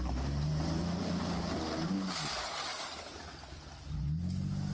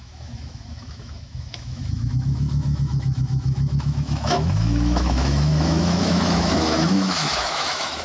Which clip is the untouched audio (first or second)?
first